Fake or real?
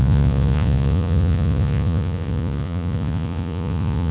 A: fake